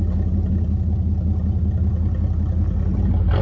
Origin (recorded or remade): recorded